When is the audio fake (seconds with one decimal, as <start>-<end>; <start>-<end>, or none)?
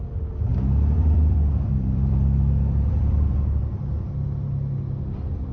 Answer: 0.5-3.6